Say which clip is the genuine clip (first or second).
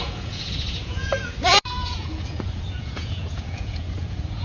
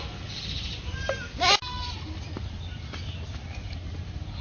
second